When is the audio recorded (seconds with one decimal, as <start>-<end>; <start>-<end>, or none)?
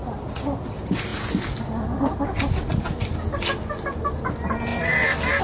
0.0-5.4